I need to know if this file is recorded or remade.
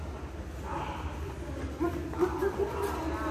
recorded